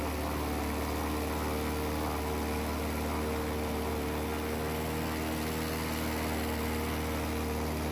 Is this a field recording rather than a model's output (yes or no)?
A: yes